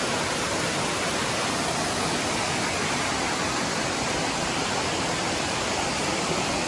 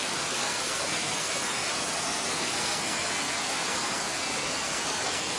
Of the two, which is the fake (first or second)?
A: second